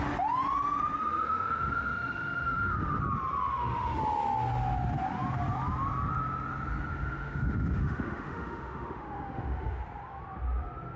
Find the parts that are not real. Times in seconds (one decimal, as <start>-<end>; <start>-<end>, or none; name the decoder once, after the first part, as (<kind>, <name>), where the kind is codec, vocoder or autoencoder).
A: 1.0-3.0 (autoencoder, DAC-VAE); 3.5-4.0; 6.9-9.8